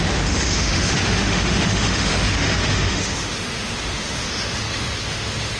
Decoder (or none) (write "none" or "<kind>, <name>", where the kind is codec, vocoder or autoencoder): autoencoder, DAC-VAE